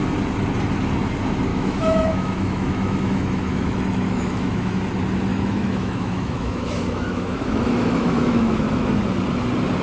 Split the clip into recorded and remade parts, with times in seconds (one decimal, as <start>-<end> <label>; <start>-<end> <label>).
0.0-1.5 recorded; 1.5-4.8 remade; 4.8-5.3 recorded; 5.3-9.0 remade; 9.0-9.8 recorded